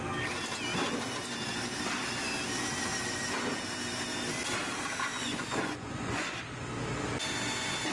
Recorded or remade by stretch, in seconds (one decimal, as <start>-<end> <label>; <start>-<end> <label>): 0.0-5.1 recorded; 5.1-6.3 remade; 6.3-7.9 recorded